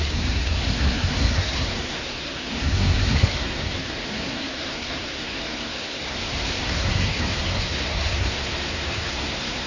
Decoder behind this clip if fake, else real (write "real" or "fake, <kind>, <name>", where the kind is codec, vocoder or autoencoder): fake, codec, SNAC